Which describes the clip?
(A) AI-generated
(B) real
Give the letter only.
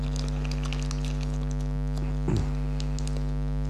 B